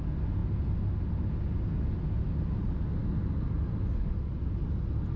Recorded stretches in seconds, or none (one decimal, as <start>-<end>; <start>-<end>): 0.0-5.2